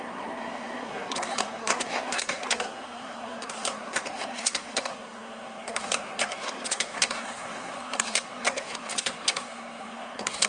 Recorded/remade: remade